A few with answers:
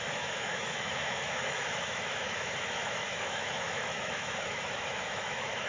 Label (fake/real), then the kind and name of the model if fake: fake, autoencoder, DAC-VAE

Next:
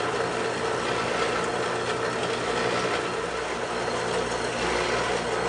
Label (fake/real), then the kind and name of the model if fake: real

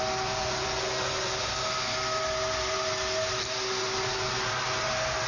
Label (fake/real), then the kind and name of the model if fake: real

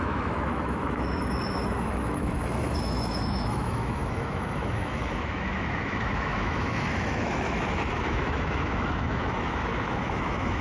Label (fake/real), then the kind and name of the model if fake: fake, autoencoder, DAC-VAE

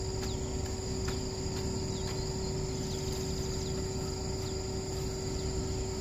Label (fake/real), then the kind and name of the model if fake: real